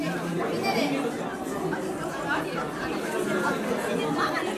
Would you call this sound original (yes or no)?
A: yes